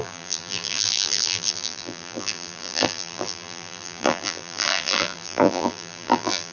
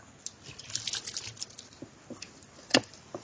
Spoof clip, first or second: first